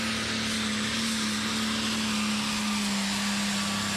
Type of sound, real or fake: real